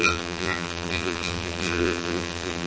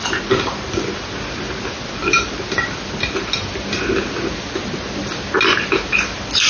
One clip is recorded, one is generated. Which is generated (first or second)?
first